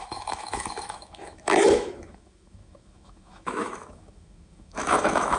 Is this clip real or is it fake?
fake